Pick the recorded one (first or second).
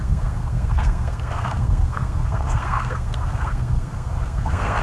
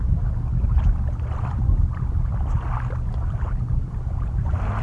second